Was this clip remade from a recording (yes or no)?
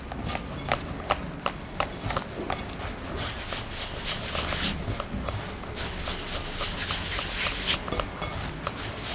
no